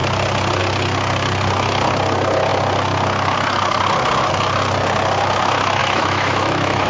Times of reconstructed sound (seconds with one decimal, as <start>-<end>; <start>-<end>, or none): 5.8-6.9